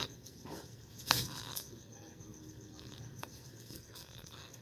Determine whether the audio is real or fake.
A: fake